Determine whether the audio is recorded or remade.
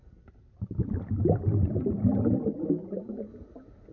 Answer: recorded